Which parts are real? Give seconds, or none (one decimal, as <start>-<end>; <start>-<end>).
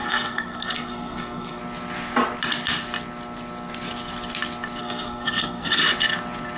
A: 1.6-4.8; 5.8-6.6